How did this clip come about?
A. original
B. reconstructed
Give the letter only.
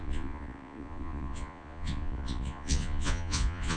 B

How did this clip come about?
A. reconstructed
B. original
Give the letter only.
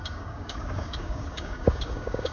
A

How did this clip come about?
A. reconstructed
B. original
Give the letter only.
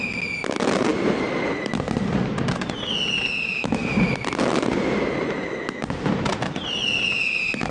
B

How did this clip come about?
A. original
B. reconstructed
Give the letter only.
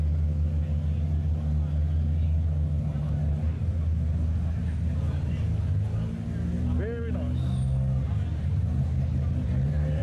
A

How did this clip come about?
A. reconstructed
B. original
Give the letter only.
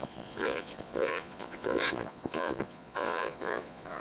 A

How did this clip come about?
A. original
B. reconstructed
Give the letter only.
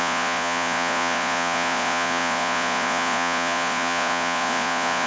B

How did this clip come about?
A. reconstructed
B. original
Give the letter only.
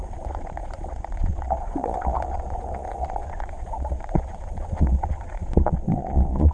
A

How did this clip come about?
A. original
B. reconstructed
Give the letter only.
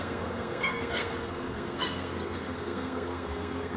B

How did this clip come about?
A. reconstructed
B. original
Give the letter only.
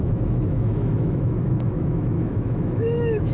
A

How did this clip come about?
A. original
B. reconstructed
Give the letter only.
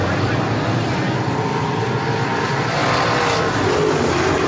A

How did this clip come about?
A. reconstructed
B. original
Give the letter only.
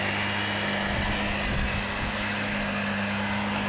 B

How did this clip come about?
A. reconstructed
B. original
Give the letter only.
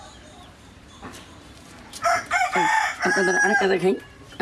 A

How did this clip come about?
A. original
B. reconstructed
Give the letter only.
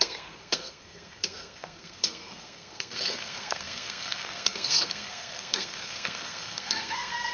B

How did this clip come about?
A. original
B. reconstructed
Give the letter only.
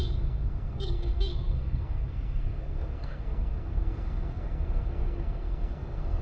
B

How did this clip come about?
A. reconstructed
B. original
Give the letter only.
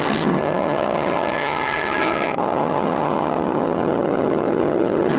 A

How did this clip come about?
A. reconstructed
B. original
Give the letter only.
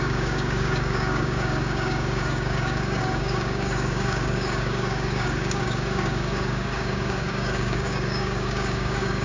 A